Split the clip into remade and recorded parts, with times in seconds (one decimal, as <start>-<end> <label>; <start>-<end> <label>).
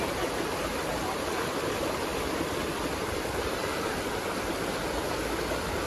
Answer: 0.0-5.9 recorded